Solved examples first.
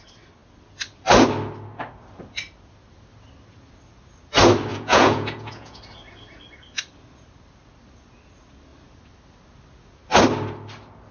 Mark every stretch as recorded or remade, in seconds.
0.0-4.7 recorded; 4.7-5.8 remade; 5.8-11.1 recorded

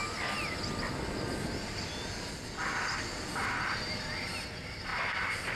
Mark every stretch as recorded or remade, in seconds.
0.0-5.6 recorded

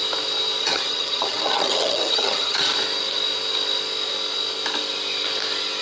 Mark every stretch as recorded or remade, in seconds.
0.0-0.6 recorded; 0.6-2.7 remade; 2.7-5.8 recorded

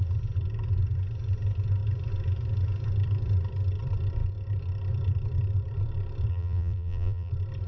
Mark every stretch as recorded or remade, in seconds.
0.0-6.3 recorded; 6.3-7.3 remade; 7.3-7.7 recorded